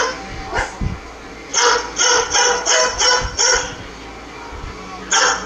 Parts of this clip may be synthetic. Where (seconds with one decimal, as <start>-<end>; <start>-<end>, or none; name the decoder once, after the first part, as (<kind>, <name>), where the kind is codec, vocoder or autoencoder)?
none